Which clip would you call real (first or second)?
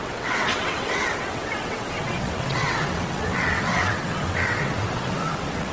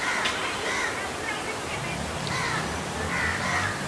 second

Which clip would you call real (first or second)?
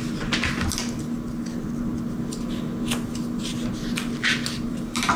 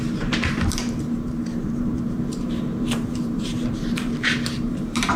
first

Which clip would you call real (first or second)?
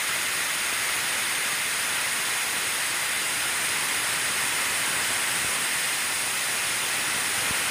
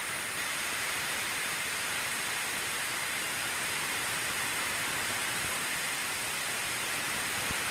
first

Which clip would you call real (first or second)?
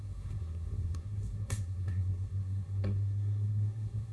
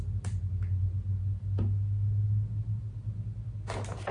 second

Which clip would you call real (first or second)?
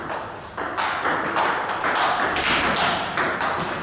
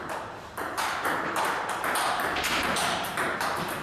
first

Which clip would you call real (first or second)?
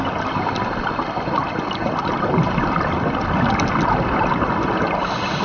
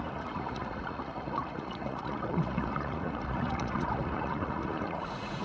first